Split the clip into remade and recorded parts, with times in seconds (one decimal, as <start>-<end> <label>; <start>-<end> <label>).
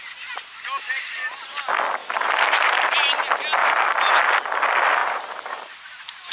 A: 0.0-2.0 recorded; 2.0-3.2 remade; 3.2-3.6 recorded; 3.6-4.2 remade; 4.2-5.0 recorded; 5.0-6.3 remade